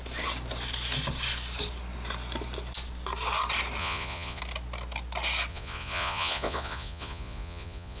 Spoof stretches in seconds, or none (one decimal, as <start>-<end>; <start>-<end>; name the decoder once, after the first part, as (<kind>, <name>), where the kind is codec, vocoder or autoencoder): 3.8-4.4 (vocoder, Vocos); 5.5-8.0